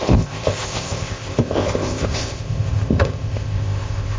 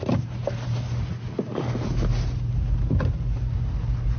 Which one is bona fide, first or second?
second